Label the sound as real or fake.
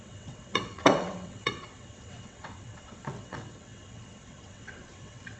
fake